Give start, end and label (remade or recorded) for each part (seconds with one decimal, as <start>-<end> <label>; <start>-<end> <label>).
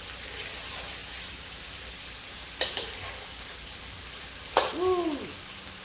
0.0-5.8 recorded